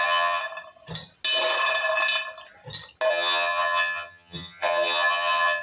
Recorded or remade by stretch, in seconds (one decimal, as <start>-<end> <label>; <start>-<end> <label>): 0.0-0.4 remade; 0.4-3.1 recorded; 3.1-5.6 remade